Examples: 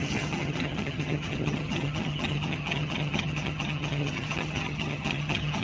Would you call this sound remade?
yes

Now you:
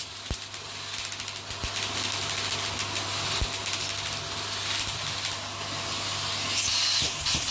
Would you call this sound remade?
no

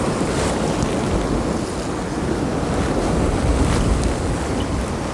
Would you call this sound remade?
no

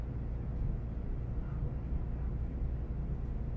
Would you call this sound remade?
no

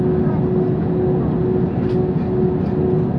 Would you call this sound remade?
no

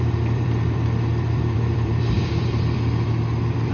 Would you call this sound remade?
yes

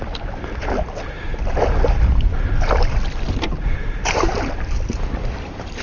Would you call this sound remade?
no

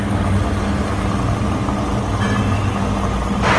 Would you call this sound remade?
no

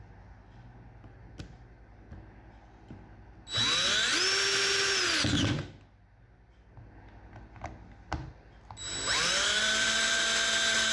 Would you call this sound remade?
no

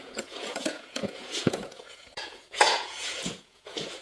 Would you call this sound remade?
yes